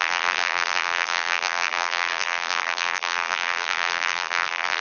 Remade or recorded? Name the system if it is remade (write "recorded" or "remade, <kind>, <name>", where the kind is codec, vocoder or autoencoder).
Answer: remade, vocoder, BigVGAN v2